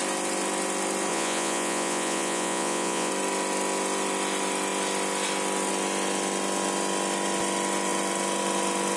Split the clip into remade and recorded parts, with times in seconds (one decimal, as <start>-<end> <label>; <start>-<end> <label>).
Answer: 0.0-1.1 recorded; 1.1-3.1 remade; 3.1-9.0 recorded